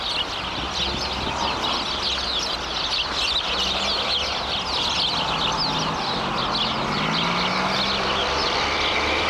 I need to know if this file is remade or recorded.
recorded